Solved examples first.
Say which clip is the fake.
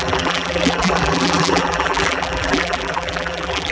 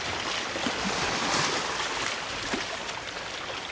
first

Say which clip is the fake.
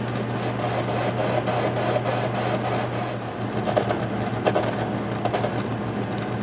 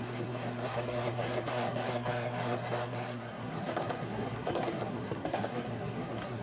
second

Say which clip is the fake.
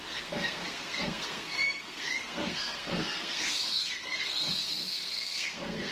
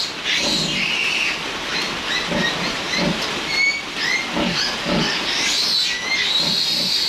first